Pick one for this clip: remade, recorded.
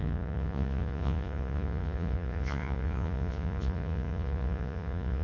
remade